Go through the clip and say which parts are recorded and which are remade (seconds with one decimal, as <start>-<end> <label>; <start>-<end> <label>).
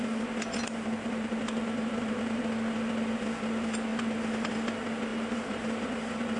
0.0-0.6 recorded; 0.6-2.4 remade; 2.4-3.9 recorded; 3.9-4.5 remade; 4.5-5.1 recorded; 5.1-6.4 remade